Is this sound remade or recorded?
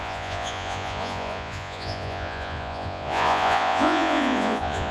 remade